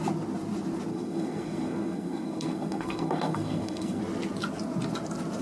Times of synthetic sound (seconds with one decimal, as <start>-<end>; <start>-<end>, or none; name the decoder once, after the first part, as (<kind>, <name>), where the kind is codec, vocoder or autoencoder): 0.9-4.0 (codec, SNAC)